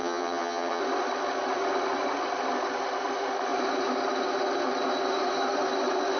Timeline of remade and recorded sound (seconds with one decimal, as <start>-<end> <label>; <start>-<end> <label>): 0.0-0.8 remade; 0.8-6.2 recorded